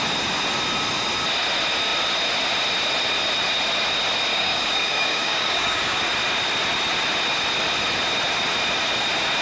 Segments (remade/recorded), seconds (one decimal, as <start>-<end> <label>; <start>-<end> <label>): 0.0-4.3 recorded; 4.3-6.0 remade; 6.0-9.4 recorded